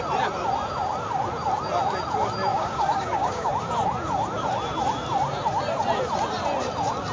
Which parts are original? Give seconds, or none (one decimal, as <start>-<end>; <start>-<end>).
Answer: 0.0-2.5; 3.5-7.1